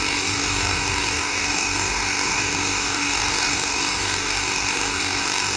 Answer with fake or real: fake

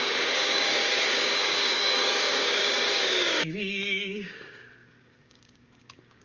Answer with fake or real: fake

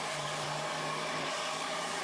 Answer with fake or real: fake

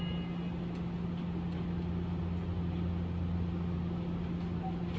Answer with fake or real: real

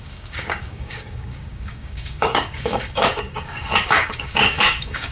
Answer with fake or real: fake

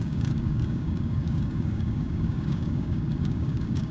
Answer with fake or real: fake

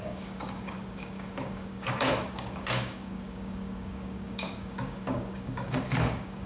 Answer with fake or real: fake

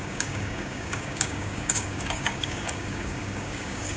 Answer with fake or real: fake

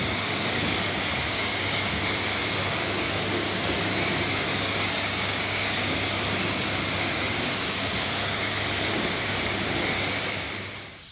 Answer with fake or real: fake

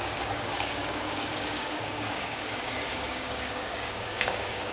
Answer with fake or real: fake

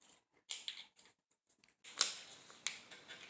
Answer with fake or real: real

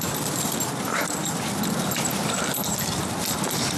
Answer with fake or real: real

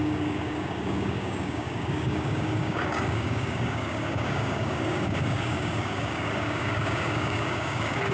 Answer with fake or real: fake